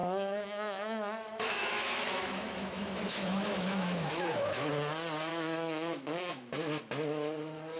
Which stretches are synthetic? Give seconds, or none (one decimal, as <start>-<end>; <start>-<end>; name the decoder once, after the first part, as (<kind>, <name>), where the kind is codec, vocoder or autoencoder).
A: 0.0-4.7 (autoencoder, DAC-VAE); 5.3-6.5